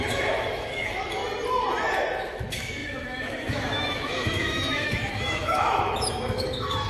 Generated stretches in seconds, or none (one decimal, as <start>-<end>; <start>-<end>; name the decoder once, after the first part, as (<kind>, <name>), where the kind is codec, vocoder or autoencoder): 0.0-1.2 (autoencoder, DAC-VAE); 2.2-6.9